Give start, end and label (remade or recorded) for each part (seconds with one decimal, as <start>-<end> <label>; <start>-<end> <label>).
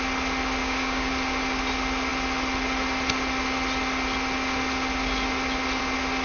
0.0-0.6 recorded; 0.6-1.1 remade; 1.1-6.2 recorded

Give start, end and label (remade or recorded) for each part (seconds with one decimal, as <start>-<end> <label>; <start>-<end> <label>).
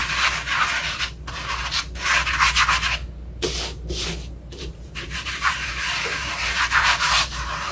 0.0-4.6 recorded; 4.6-7.7 remade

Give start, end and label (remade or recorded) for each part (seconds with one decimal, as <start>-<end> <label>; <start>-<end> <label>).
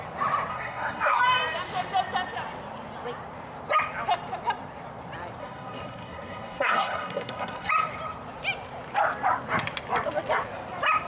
0.0-0.5 recorded; 0.5-1.2 remade; 1.2-5.4 recorded; 5.4-7.7 remade; 7.7-11.1 recorded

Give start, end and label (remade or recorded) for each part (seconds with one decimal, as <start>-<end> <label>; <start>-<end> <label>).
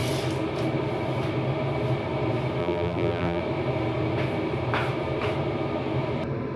0.0-2.6 recorded; 2.6-3.4 remade; 3.4-6.6 recorded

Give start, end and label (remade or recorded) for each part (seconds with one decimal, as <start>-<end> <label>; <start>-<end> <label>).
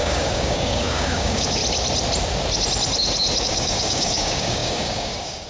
0.0-1.6 remade; 1.6-3.4 recorded; 3.4-5.5 remade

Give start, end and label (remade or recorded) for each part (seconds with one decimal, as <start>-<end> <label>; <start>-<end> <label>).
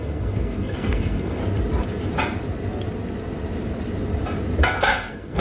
0.0-1.4 remade; 1.4-4.6 recorded; 4.6-5.4 remade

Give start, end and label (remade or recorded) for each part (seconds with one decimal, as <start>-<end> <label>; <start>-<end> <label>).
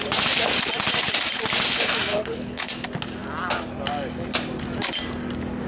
0.0-2.1 recorded; 2.1-2.7 remade; 2.7-5.7 recorded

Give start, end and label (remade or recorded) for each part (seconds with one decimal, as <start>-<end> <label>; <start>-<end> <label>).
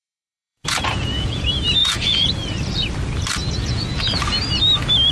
0.0-1.4 remade; 1.4-1.8 recorded; 1.8-2.3 remade; 2.3-3.4 recorded; 3.4-4.0 remade; 4.0-5.1 recorded